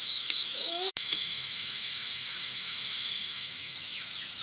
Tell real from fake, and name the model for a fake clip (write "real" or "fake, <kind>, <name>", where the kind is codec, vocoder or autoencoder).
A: fake, autoencoder, DAC-VAE